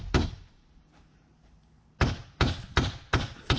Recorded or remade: remade